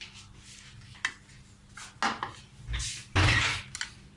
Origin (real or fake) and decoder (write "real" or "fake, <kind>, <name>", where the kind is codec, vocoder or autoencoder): real